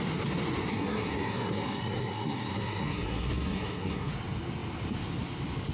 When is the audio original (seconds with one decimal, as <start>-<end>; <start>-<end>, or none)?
0.0-0.7; 4.1-5.7